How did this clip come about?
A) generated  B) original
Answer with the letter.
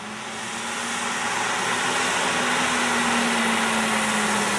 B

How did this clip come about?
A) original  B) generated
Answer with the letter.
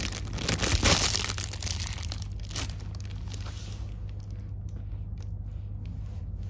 A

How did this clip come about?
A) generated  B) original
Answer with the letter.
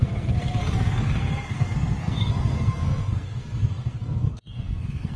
A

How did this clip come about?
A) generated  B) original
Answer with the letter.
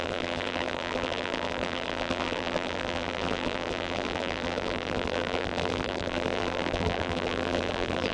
A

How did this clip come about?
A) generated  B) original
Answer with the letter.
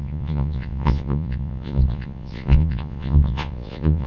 A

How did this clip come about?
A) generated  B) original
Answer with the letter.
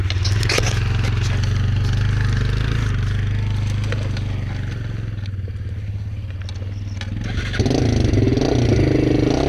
B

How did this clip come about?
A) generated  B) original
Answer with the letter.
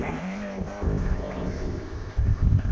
A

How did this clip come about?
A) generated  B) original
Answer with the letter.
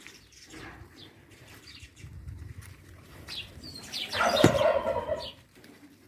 A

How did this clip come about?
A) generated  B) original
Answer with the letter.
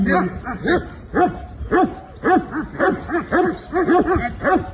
B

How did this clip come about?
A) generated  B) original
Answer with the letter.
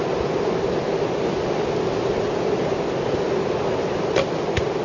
B